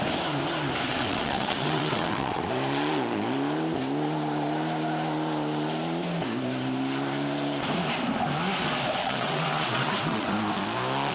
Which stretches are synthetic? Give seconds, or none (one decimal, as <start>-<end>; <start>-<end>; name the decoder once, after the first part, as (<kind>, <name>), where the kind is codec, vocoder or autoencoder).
0.9-2.4 (vocoder, WaveNeXt); 9.0-10.3